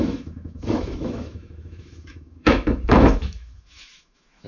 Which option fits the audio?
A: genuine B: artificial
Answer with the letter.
B